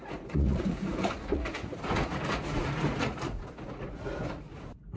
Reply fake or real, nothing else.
fake